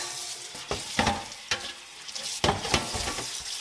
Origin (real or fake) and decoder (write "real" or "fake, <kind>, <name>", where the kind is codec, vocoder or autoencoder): real